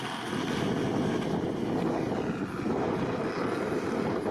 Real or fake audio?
real